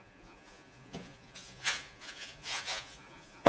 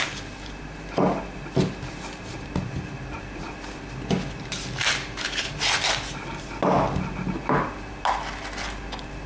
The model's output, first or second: first